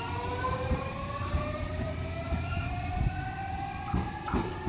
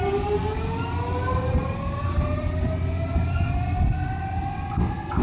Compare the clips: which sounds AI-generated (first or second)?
first